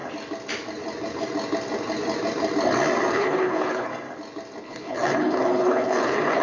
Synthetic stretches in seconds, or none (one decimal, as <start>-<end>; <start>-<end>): 3.1-3.9; 4.6-6.4